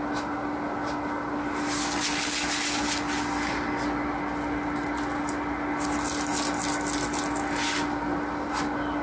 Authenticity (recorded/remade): recorded